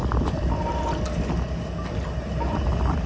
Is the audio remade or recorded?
recorded